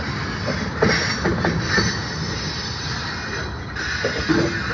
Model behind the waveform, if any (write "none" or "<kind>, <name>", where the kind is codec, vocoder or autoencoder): none